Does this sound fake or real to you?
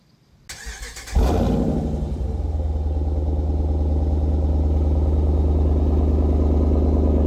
real